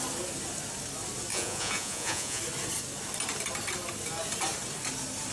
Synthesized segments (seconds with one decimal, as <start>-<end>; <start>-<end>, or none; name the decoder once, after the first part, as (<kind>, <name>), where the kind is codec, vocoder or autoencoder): 1.3-2.4 (vocoder, Vocos)